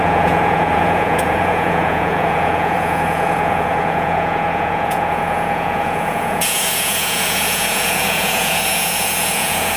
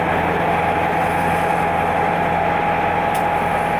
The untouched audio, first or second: second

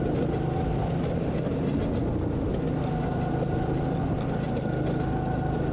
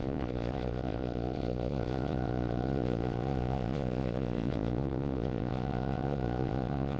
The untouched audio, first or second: first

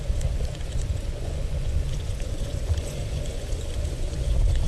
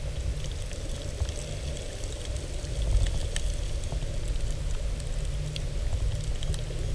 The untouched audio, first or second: second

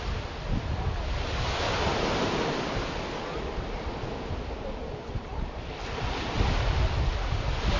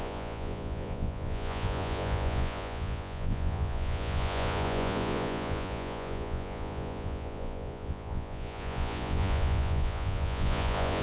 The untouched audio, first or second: first